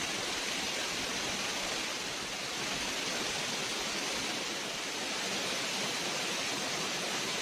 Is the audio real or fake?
real